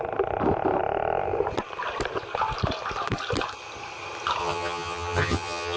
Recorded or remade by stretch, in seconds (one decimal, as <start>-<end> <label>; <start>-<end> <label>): 0.0-4.4 recorded; 4.4-5.8 remade